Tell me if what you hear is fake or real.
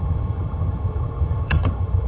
fake